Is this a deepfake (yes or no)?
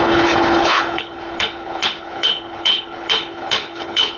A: yes